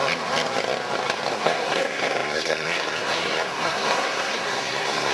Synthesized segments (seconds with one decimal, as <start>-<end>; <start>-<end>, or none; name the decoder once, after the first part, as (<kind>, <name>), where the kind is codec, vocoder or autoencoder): 1.3-5.1 (codec, SNAC)